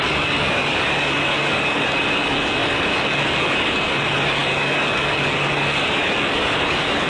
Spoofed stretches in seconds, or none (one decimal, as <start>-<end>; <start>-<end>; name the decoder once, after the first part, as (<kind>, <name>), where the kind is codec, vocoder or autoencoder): 0.0-7.1 (codec, DAC)